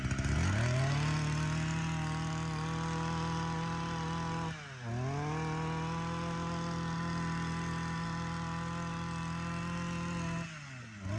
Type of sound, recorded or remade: recorded